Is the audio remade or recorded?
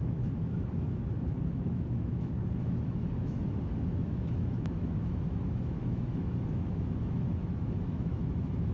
remade